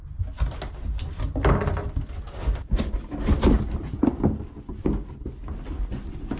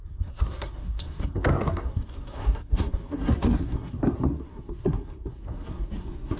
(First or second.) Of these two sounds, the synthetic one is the second